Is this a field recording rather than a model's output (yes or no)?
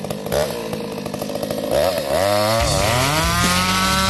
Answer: yes